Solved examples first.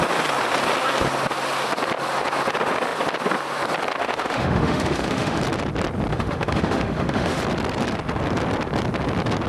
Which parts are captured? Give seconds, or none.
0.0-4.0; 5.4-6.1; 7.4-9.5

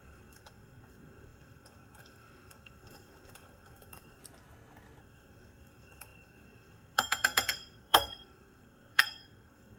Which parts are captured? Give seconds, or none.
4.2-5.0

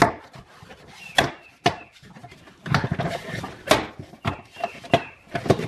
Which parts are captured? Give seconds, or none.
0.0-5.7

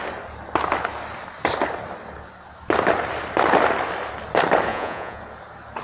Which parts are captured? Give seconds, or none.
0.0-4.7; 5.2-5.8

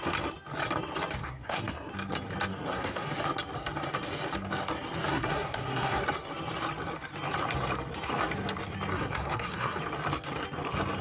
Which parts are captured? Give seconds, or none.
0.0-1.2; 1.9-2.5; 3.1-5.1; 6.0-8.9; 9.8-11.0

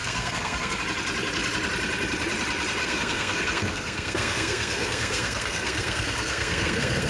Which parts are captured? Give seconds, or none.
0.8-2.8